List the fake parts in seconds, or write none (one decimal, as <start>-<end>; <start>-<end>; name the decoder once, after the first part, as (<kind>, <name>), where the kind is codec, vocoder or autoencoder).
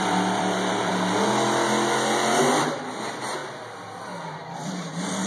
0.0-0.9 (vocoder, BigVGAN v2); 2.4-3.4; 4.0-5.3